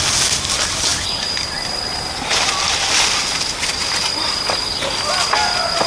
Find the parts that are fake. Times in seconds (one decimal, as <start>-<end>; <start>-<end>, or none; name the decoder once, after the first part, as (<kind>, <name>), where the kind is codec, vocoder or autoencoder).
none